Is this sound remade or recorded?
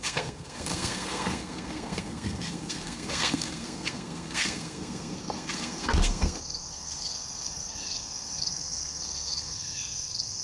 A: remade